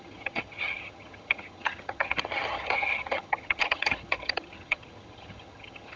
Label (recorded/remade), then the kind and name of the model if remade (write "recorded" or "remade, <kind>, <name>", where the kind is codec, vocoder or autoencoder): remade, vocoder, HiFi-GAN